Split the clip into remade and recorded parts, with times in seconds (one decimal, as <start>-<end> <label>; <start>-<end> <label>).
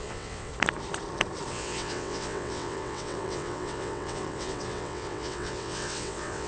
0.0-0.5 remade; 0.5-1.5 recorded; 1.5-6.5 remade